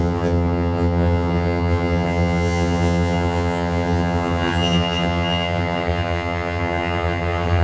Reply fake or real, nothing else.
fake